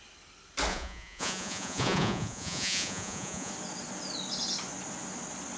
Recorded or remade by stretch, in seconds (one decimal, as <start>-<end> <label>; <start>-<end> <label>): 0.0-0.7 recorded; 0.7-3.5 remade; 3.5-5.6 recorded